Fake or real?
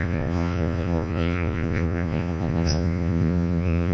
fake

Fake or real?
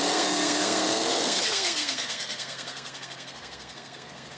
fake